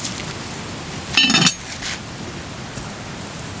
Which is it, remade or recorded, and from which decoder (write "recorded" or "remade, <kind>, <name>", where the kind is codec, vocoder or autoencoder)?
recorded